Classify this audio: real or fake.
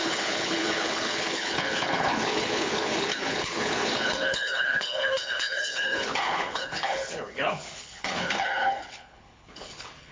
fake